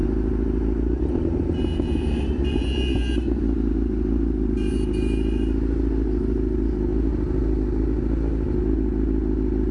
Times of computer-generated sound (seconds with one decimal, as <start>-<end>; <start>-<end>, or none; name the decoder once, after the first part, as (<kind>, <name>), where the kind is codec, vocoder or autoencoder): none